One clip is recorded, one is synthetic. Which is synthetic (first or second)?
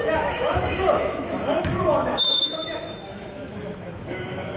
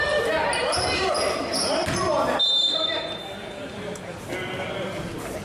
first